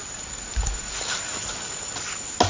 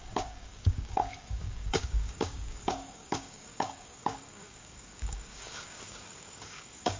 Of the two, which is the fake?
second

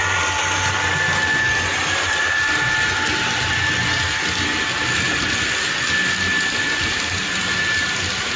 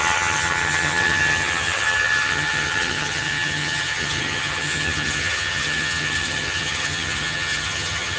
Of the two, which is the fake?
second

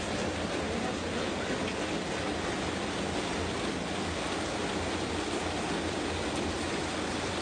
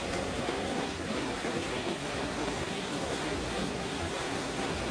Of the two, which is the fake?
second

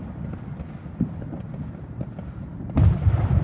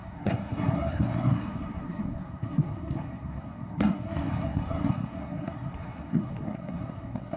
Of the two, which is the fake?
second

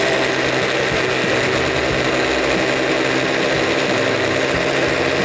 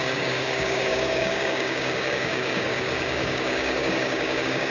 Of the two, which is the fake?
second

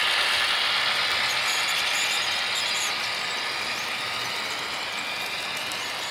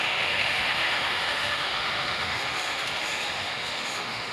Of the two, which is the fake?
second